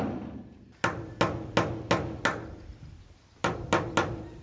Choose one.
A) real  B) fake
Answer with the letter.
A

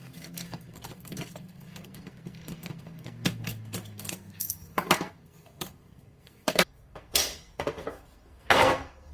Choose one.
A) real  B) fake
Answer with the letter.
B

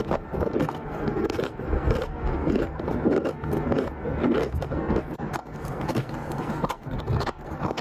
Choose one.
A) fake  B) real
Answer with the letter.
A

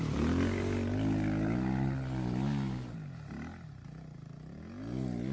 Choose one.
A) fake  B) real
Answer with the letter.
B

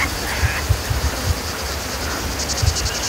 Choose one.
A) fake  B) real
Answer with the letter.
B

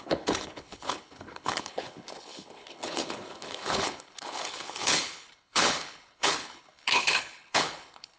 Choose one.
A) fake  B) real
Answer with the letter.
A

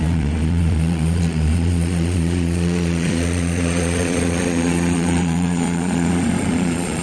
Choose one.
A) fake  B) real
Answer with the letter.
A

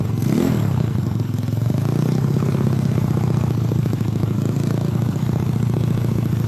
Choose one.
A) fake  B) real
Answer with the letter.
A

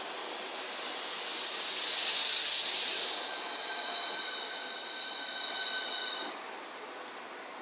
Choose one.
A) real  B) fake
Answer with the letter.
A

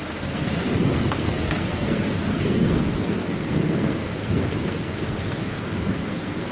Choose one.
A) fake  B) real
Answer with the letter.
A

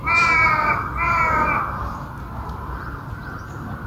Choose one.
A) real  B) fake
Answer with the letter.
A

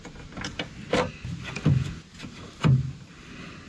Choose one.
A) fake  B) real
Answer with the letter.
B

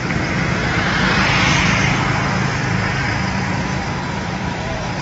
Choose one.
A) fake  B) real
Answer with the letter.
A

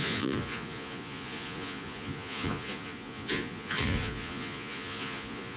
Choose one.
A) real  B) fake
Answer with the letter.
B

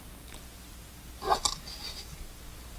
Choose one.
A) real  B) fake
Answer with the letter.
A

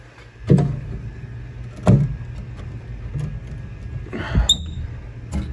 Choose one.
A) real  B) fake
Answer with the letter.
A